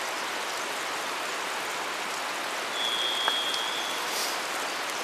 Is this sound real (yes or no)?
yes